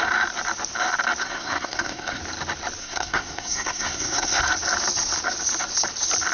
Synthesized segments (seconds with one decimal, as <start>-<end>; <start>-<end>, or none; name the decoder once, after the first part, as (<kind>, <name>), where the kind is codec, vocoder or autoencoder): 1.2-2.2 (codec, SNAC); 2.8-4.4